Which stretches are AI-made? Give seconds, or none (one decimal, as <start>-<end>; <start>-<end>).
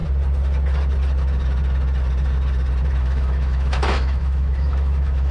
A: 3.0-5.3